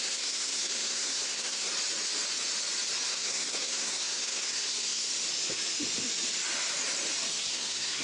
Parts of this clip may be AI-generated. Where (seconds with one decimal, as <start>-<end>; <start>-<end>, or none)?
0.0-1.7; 3.1-5.1; 7.5-8.0